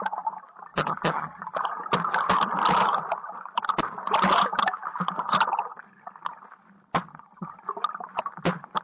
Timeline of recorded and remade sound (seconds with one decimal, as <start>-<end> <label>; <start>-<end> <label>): 0.0-0.7 recorded; 0.7-1.4 remade; 1.4-7.1 recorded; 7.1-7.6 remade; 7.6-8.8 recorded